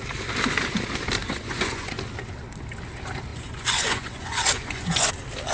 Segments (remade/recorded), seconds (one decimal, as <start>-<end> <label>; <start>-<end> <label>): 0.0-1.2 recorded; 1.2-1.9 remade; 1.9-3.3 recorded; 3.3-5.1 remade; 5.1-5.5 recorded